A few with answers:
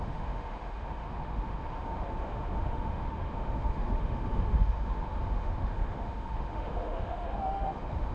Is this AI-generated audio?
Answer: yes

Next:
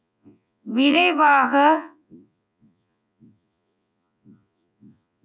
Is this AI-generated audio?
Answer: yes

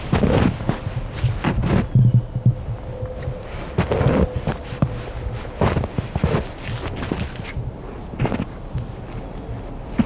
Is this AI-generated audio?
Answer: no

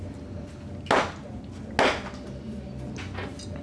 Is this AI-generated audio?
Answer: no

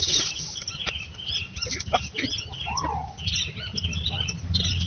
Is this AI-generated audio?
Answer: no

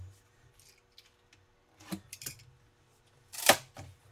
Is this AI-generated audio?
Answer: no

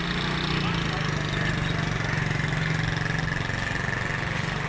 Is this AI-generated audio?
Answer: no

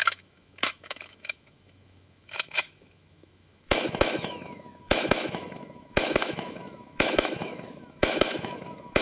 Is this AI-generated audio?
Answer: yes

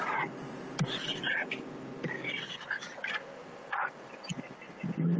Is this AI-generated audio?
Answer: no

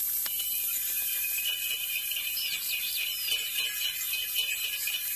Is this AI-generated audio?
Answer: no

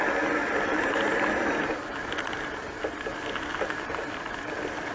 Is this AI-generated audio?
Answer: no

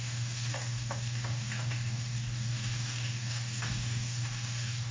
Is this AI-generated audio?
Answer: yes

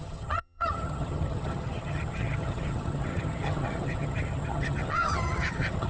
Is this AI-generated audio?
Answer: yes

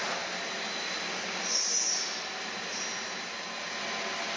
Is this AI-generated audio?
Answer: no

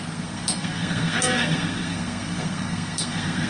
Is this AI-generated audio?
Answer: yes